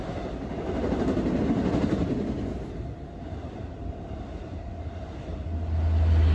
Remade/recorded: recorded